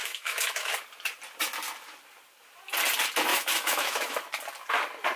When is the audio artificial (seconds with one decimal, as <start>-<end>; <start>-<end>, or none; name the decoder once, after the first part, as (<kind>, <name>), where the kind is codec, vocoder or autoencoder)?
0.0-0.7 (autoencoder, DAC-VAE); 3.3-4.2